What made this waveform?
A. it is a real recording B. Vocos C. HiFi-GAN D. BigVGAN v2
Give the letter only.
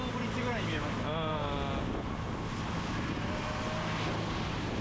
A